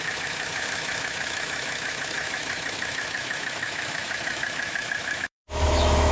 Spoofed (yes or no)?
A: yes